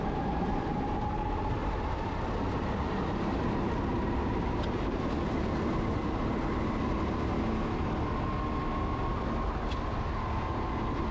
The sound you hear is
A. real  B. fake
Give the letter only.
A